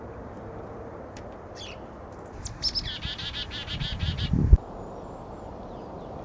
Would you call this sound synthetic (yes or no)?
yes